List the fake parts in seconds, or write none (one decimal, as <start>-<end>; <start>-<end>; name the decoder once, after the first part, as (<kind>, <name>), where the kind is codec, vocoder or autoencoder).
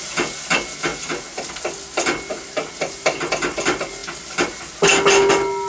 none